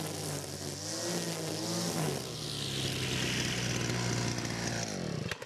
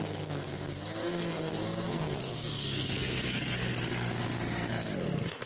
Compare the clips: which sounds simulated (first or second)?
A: second